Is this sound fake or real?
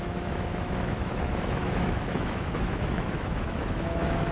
fake